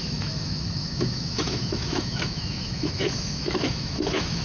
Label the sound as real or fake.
fake